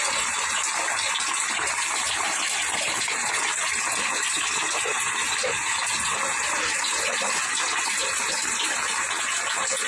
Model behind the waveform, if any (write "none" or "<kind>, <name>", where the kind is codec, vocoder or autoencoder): none